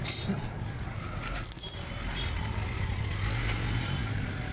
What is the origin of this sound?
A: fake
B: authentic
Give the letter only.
B